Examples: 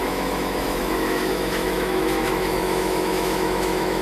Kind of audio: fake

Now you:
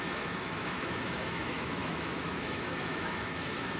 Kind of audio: fake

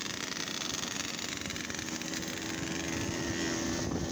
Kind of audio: real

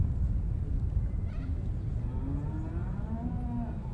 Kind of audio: real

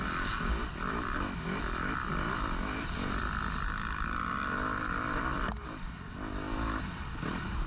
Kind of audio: real